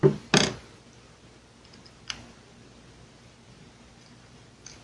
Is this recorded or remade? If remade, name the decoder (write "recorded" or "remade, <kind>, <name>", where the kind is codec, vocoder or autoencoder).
recorded